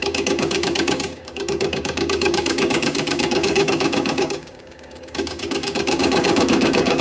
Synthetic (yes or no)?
yes